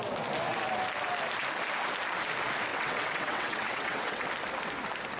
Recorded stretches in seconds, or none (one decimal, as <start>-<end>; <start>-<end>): 0.0-2.7; 4.2-5.2